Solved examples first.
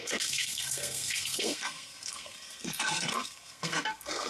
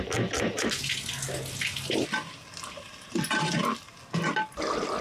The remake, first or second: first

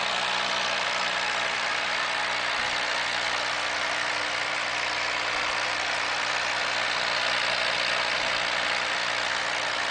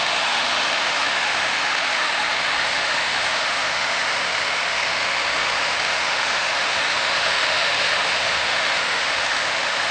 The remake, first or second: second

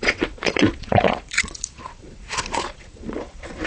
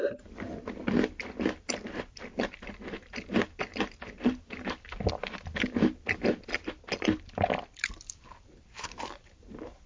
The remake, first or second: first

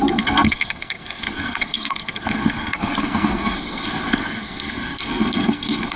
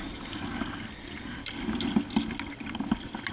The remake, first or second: first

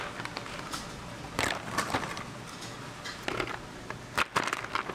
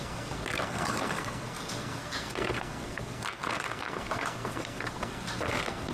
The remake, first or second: second